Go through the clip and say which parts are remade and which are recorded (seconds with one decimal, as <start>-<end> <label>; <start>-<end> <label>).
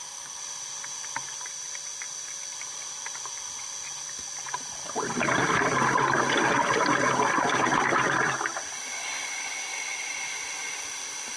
0.0-11.4 recorded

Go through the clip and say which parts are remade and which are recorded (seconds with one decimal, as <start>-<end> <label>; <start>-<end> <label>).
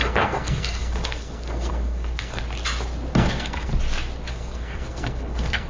0.0-2.4 remade; 2.4-3.1 recorded; 3.1-3.7 remade; 3.7-4.3 recorded; 4.3-5.7 remade